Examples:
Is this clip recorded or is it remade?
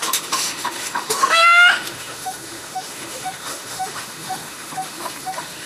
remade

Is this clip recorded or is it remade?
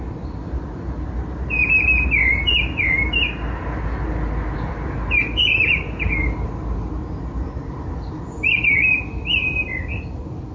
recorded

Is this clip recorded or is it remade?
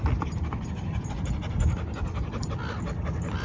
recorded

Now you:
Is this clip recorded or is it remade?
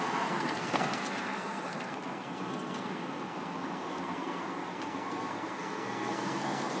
remade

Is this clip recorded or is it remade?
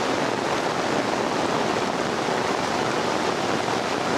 recorded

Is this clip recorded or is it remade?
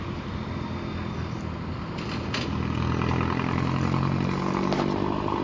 recorded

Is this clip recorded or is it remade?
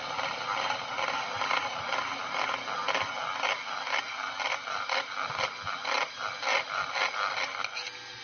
recorded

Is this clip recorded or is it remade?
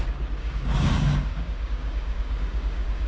remade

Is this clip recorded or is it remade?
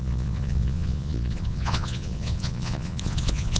remade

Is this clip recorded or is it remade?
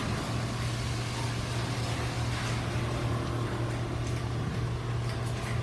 recorded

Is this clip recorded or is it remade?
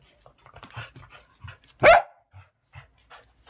recorded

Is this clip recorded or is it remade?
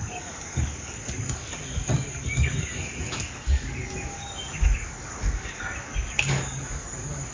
remade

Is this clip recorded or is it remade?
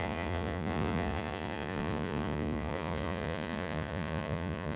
remade